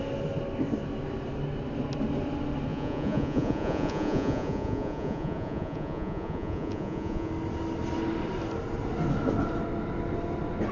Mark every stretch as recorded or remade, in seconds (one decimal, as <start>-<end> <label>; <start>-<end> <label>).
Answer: 0.0-2.7 recorded; 2.7-7.3 remade; 7.3-10.7 recorded